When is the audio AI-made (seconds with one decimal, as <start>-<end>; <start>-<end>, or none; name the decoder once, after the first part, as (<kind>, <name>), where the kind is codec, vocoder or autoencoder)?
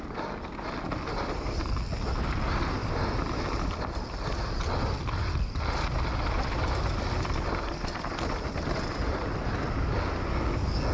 none